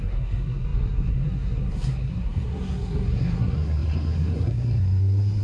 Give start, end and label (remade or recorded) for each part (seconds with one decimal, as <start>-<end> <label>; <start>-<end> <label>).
0.0-5.4 remade